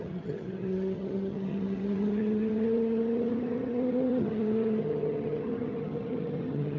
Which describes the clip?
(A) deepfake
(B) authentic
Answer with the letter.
A